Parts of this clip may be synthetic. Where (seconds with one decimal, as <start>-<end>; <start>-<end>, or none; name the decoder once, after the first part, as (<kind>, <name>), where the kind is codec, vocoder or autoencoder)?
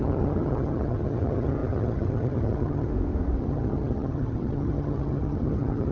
0.0-2.9 (vocoder, HiFi-GAN); 3.4-5.9